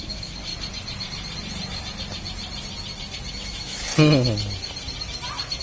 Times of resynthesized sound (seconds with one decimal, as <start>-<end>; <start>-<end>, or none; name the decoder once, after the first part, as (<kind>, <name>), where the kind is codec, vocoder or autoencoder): 0.0-0.5 (autoencoder, DAC-VAE); 3.3-3.9